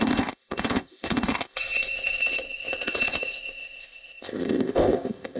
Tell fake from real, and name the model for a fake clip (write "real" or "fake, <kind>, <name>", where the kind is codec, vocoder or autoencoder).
fake, codec, ZipCodec